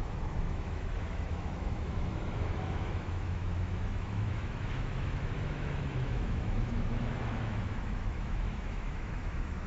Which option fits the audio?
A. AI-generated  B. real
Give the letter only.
A